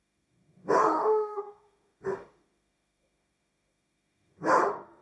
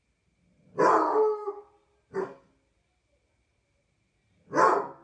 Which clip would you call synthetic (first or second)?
first